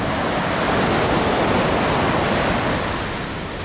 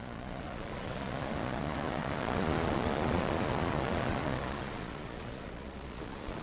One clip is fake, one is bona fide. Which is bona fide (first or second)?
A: first